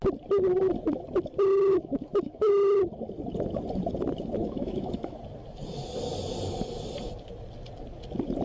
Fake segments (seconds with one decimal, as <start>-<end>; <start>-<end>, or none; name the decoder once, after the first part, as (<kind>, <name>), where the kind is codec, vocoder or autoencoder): 1.7-2.5 (autoencoder, DAC-VAE); 4.4-5.2